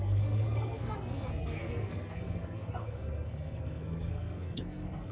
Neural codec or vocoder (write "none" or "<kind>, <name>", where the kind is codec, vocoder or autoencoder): codec, SNAC